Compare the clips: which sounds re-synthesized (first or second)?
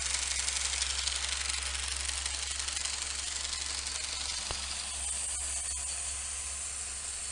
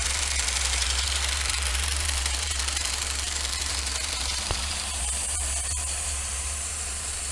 second